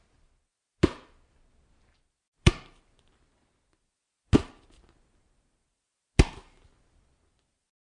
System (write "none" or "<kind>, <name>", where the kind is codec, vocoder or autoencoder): none